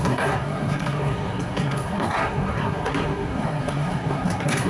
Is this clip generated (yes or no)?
yes